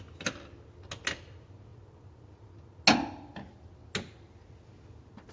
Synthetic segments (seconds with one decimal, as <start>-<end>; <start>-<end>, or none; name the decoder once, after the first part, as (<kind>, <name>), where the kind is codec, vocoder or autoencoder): none